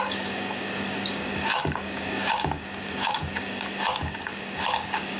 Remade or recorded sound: remade